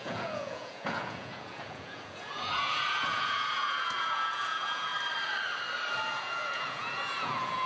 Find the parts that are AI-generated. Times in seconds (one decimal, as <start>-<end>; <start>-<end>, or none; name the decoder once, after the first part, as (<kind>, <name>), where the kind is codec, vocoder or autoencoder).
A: 0.0-4.9 (vocoder, Vocos); 6.0-7.7